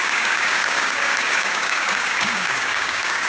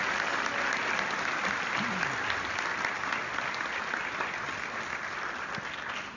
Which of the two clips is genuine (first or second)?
second